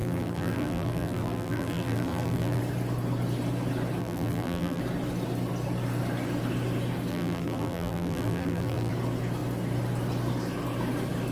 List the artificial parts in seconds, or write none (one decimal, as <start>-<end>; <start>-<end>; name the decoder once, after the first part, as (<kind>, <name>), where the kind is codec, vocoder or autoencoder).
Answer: 0.0-2.6 (vocoder, BigVGAN v2); 4.0-4.8; 7.1-8.9